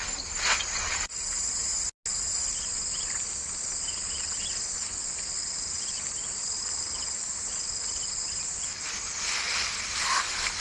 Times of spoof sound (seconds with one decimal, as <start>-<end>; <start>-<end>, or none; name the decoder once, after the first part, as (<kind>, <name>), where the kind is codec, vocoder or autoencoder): none